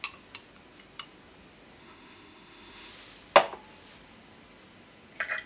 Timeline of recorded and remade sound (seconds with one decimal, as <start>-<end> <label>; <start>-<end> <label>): 0.0-1.8 recorded; 1.8-2.9 remade; 2.9-5.5 recorded